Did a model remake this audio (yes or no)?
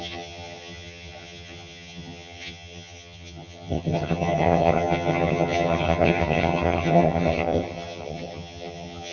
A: yes